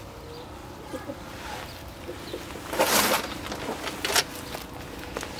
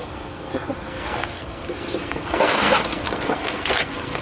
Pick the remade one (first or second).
second